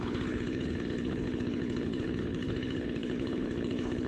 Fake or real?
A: fake